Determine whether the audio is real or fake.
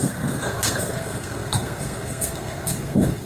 fake